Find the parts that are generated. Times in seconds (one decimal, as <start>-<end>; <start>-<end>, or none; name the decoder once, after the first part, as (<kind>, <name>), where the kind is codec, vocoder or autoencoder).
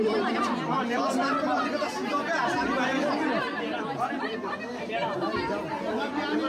none